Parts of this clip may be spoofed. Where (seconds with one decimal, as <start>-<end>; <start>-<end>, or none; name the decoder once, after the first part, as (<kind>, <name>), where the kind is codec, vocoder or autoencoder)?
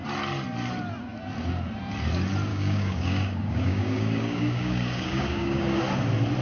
2.5-5.8 (codec, DAC)